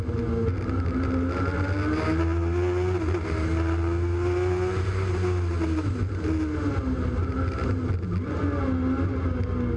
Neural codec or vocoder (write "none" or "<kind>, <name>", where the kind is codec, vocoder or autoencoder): none